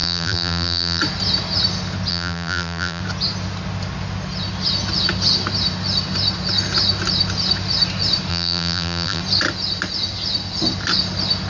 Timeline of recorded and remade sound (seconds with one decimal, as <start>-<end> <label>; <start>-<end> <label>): 0.0-1.0 remade; 1.0-2.1 recorded; 2.1-3.0 remade; 3.0-8.3 recorded; 8.3-9.2 remade; 9.2-11.5 recorded